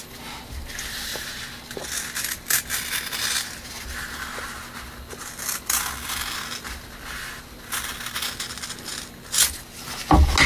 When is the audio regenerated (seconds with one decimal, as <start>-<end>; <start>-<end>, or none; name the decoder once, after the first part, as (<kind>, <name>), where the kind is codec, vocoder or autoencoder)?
none